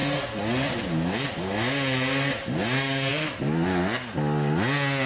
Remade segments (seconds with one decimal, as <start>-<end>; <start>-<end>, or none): none